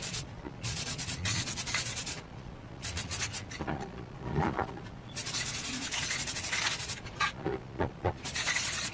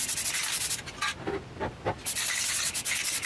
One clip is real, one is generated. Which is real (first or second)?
second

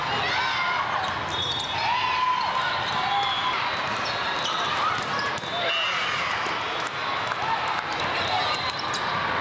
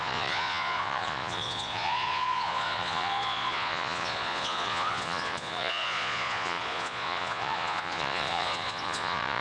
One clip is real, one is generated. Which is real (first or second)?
first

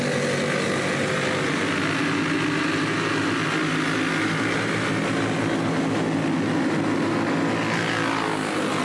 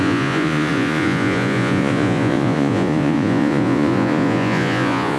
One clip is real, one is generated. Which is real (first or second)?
first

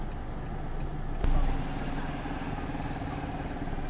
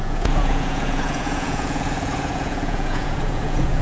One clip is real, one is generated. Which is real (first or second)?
first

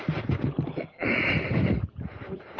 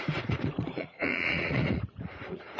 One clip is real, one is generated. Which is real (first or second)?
first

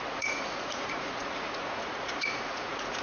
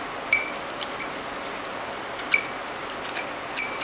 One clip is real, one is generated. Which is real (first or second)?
second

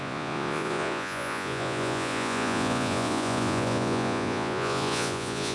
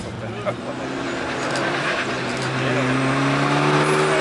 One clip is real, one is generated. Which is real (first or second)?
second